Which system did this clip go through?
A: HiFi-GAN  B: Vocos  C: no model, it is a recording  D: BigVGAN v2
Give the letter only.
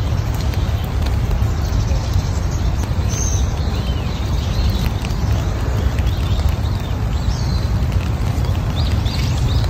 D